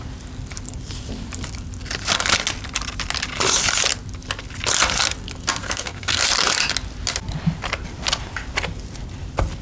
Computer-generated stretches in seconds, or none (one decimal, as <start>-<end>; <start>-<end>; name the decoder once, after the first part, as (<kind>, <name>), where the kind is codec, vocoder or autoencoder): 5.6-6.2 (codec, SNAC)